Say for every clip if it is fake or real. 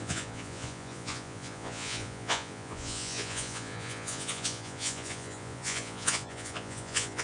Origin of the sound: fake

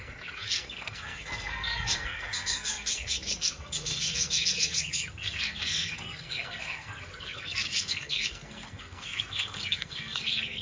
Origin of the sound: fake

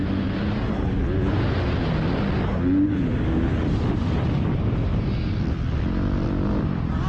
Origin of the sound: real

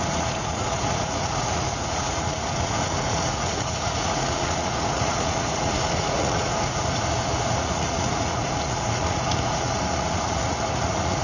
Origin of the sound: fake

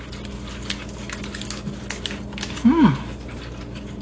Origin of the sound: real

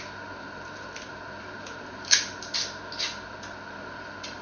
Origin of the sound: real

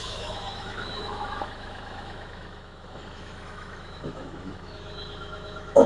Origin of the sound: fake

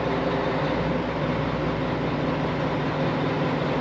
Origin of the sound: real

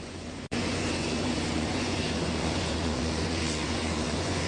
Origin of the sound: fake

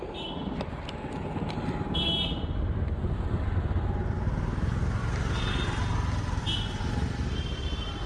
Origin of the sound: real